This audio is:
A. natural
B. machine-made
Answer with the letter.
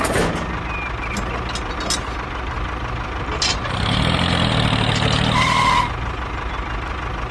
A